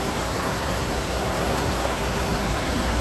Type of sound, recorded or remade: remade